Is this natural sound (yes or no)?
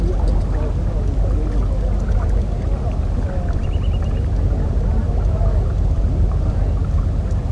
yes